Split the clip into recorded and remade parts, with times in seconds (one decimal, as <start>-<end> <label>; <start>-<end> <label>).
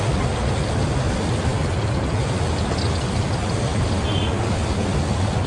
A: 0.0-5.5 recorded